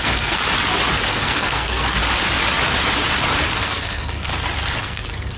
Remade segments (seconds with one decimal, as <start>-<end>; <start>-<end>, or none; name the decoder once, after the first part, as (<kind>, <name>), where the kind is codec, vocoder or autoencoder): 0.0-0.4 (codec, SNAC); 1.1-2.0; 3.6-4.3; 4.8-5.4